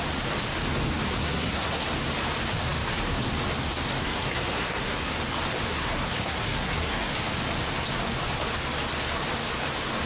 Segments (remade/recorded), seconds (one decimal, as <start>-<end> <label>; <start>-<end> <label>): 0.0-1.2 recorded; 1.2-1.9 remade; 1.9-4.0 recorded; 4.0-5.1 remade; 5.1-5.7 recorded; 5.7-7.1 remade; 7.1-10.1 recorded